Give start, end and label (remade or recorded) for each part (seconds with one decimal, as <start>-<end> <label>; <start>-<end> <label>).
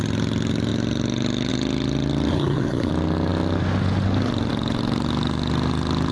0.0-2.3 recorded; 2.3-2.9 remade; 2.9-6.1 recorded